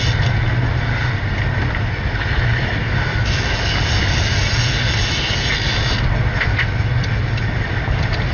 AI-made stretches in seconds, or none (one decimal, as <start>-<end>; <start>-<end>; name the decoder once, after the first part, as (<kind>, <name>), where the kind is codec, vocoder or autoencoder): 3.1-4.1 (vocoder, BigVGAN v2); 7.2-7.7